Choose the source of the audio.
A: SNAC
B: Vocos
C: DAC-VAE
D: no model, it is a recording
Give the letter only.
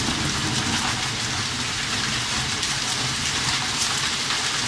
D